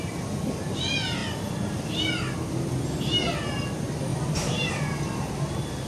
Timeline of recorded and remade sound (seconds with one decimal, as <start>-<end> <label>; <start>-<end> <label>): 0.0-5.9 recorded